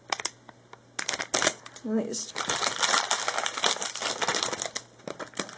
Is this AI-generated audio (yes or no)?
no